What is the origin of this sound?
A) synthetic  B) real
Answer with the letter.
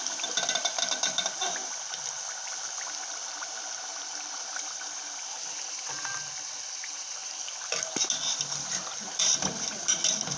A